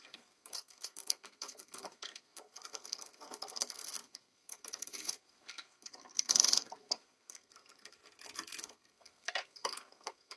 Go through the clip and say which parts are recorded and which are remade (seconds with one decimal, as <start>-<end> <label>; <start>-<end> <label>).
0.0-8.0 remade; 8.0-8.6 recorded; 8.6-10.4 remade